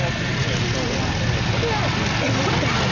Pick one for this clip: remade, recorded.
recorded